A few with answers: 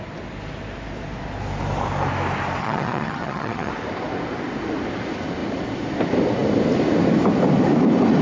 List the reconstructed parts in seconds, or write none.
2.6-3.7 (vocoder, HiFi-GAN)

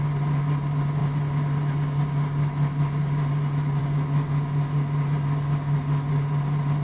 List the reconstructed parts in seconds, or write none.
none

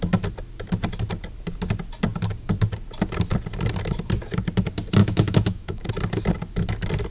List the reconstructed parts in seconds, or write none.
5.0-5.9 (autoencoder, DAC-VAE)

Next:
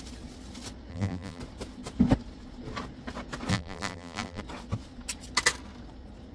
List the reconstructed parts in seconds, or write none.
0.9-1.4 (vocoder, BigVGAN v2); 3.5-4.4

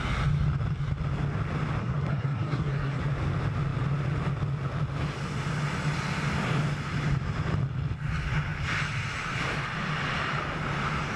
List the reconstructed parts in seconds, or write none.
1.8-3.0 (codec, SNAC)